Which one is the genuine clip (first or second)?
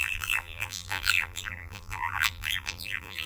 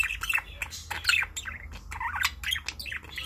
second